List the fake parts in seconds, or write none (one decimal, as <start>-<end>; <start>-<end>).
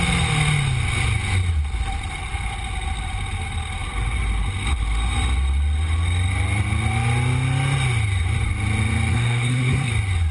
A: 9.1-9.9